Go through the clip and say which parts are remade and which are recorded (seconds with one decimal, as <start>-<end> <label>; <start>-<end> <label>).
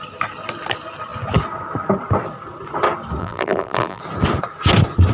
0.0-3.2 recorded; 3.2-4.0 remade; 4.0-5.1 recorded